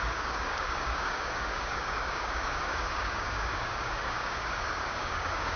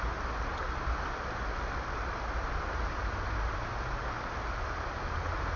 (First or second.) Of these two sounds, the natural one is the second